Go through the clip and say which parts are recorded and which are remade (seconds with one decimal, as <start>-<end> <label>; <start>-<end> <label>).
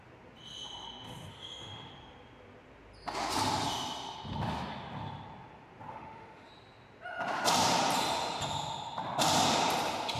0.0-1.3 recorded; 1.3-1.9 remade; 1.9-5.9 recorded; 5.9-6.5 remade; 6.5-10.2 recorded